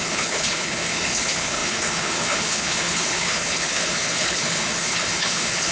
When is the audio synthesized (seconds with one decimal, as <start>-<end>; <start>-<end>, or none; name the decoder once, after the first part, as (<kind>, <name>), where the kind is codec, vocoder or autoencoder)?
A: 0.0-5.7 (codec, HILCodec)